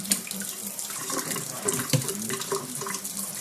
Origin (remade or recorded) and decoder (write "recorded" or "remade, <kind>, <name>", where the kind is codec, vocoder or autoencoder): remade, vocoder, BigVGAN v2